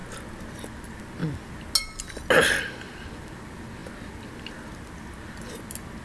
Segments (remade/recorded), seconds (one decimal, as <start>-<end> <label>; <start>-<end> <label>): 0.0-6.0 recorded